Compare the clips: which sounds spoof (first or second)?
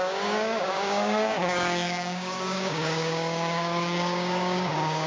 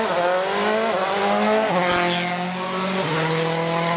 first